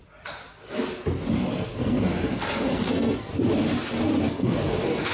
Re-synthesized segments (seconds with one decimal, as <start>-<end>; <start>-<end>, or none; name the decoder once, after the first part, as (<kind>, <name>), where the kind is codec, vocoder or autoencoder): 1.3-3.3 (codec, SNAC); 4.2-5.1